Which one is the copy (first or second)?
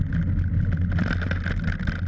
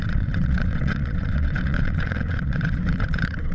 second